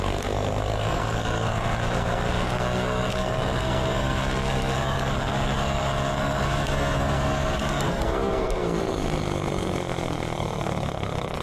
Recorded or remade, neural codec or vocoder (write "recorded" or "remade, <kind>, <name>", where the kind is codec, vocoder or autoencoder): remade, codec, SNAC